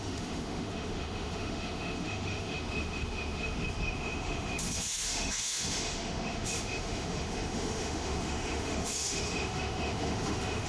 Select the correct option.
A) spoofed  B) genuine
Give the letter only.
A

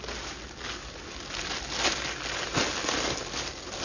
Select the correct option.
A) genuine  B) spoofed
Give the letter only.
A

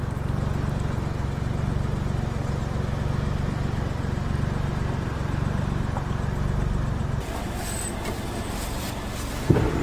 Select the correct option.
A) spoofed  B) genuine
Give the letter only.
B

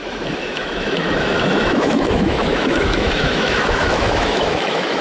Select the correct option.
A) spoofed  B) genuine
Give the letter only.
A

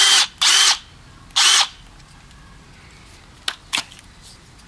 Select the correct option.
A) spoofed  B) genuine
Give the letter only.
B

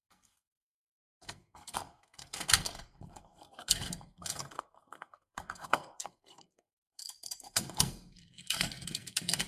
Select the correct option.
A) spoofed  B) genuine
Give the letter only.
A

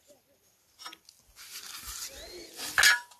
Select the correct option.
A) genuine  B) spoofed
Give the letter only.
A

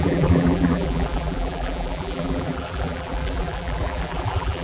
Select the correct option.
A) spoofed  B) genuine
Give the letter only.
A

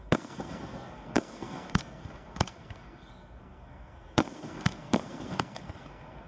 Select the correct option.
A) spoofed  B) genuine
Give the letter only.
A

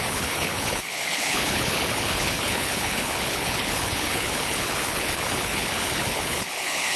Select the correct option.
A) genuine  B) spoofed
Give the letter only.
B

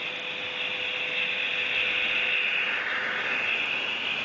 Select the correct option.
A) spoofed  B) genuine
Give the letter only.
B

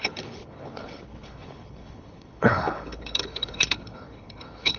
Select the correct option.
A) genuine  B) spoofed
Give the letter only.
B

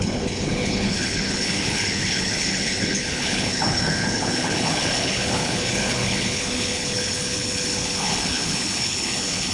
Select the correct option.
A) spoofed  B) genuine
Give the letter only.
A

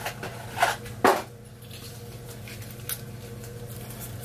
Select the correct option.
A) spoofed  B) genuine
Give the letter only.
B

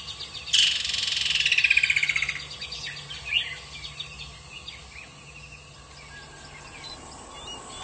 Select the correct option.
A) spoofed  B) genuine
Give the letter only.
B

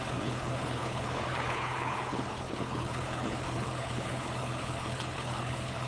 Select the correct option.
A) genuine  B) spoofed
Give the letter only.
B